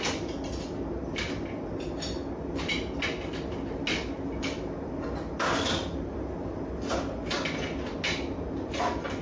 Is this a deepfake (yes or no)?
no